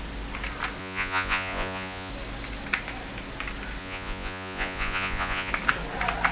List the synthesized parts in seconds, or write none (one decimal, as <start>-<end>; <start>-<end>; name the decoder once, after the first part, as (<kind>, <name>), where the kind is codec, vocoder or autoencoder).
0.8-2.1 (vocoder, Vocos); 3.8-5.5